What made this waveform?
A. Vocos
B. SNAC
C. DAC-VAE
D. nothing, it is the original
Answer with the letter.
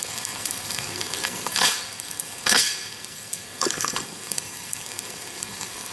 B